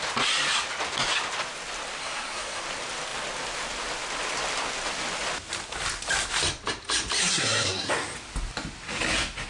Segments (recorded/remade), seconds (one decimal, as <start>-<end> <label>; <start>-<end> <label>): 0.0-2.0 recorded; 2.0-2.6 remade; 2.6-7.2 recorded; 7.2-7.9 remade; 7.9-9.5 recorded